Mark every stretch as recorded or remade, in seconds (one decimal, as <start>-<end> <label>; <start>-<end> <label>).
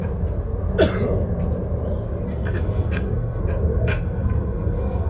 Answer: 0.0-2.3 recorded; 2.3-3.4 remade; 3.4-3.8 recorded; 3.8-5.1 remade